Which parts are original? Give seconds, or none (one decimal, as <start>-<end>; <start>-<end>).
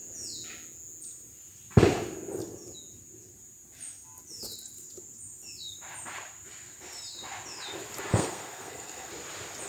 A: 0.0-8.1; 9.1-9.7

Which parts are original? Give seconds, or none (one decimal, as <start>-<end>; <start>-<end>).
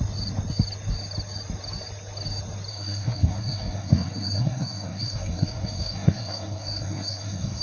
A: 0.0-2.7